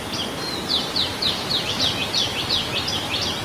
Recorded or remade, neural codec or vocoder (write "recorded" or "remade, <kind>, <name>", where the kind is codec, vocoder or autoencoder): recorded